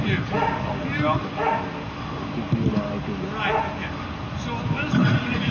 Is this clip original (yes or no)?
yes